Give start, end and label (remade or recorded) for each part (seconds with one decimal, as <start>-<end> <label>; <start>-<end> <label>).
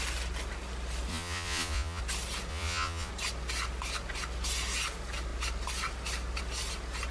0.0-1.1 recorded; 1.1-2.0 remade; 2.0-2.5 recorded; 2.5-3.1 remade; 3.1-7.1 recorded